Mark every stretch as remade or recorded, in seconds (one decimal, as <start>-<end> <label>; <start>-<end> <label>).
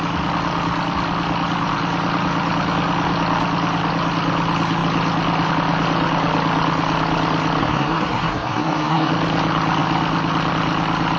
0.0-7.6 recorded; 7.6-9.1 remade; 9.1-11.2 recorded